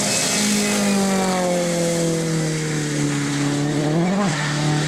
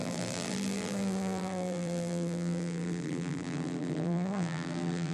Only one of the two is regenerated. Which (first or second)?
second